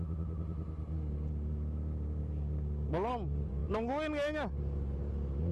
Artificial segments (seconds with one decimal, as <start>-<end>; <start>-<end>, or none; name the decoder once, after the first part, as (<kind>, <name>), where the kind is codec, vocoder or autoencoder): none